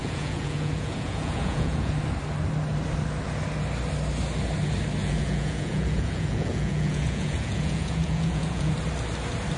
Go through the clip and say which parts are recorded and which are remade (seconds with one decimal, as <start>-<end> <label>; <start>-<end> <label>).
0.0-1.9 remade; 1.9-5.0 recorded; 5.0-8.7 remade; 8.7-9.6 recorded